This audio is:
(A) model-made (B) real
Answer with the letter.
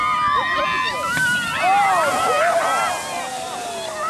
B